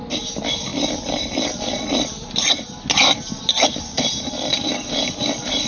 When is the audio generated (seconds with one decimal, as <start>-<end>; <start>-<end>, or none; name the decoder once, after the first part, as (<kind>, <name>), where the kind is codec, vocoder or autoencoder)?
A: none